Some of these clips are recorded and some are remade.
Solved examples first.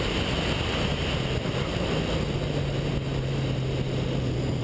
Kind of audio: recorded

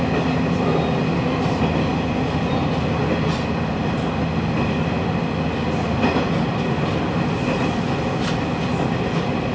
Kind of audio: recorded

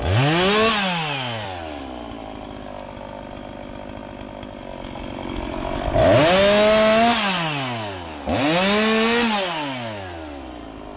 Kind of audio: recorded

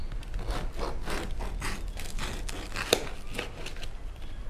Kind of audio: recorded